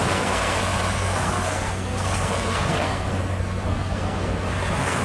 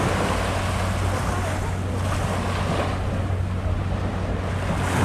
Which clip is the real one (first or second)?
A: second